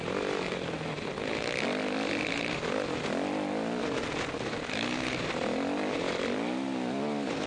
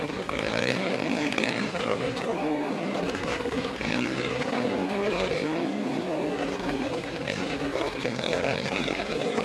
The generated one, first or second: second